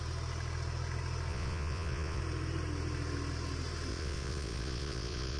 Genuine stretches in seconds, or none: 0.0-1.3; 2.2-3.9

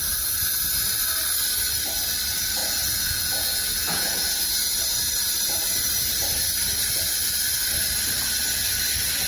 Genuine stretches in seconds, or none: 0.0-2.6; 4.8-9.3

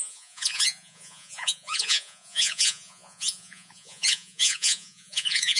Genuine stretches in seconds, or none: none

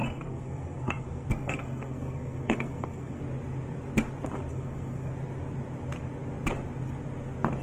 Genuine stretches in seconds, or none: 3.2-4.5; 5.1-7.6